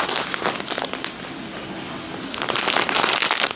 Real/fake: real